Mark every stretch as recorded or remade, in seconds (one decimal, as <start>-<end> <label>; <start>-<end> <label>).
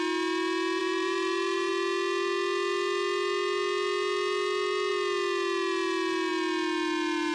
0.0-0.8 recorded; 0.8-1.7 remade; 1.7-7.3 recorded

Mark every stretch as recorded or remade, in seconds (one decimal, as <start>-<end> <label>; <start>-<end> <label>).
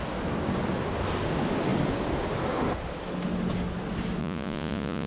0.0-4.2 recorded; 4.2-5.1 remade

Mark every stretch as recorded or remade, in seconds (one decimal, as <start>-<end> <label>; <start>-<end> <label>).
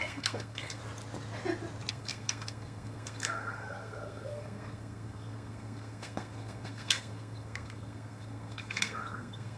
0.0-0.8 remade; 0.8-1.9 recorded; 1.9-9.6 remade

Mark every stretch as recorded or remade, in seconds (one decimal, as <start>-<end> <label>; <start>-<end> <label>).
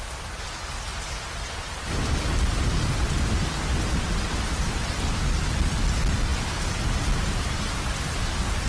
0.0-8.7 recorded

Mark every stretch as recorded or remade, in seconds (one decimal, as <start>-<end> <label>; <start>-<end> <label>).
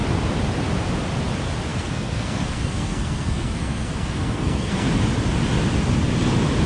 0.0-1.7 recorded; 1.7-4.9 remade; 4.9-6.7 recorded